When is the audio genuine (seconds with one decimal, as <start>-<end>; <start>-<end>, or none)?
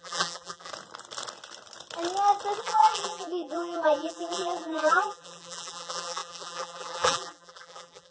0.7-2.6